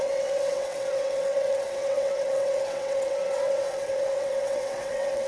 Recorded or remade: remade